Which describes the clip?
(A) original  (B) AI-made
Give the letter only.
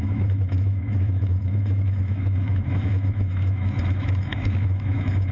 B